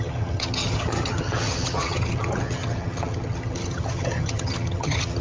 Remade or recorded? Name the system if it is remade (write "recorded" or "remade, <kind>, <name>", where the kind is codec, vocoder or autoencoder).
remade, vocoder, HiFi-GAN